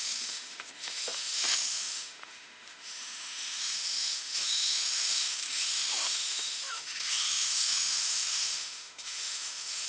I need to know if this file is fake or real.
fake